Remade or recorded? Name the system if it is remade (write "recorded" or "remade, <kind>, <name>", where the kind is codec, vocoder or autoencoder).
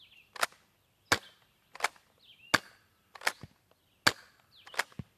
recorded